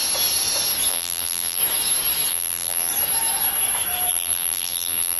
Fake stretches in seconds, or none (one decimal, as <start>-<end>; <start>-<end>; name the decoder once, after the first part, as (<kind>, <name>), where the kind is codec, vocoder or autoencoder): 0.9-1.6 (vocoder, BigVGAN v2); 2.3-2.9; 4.1-5.2